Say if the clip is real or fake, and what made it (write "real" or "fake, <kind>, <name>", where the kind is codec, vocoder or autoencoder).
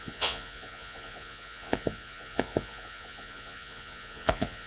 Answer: fake, vocoder, Vocos